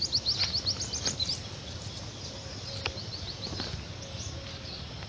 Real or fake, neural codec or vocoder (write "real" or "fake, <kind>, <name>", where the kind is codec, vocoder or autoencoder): real